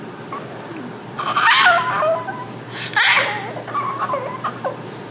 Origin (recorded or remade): recorded